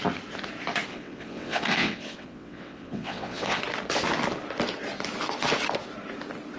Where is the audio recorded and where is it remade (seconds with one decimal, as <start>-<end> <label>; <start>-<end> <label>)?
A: 0.0-0.9 recorded; 0.9-3.6 remade; 3.6-6.6 recorded